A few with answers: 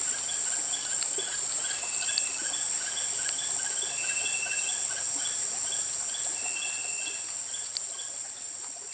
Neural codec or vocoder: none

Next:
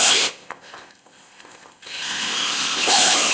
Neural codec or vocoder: codec, ZipCodec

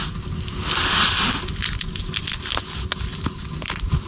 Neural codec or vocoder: none